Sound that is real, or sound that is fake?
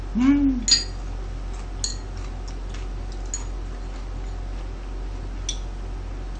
real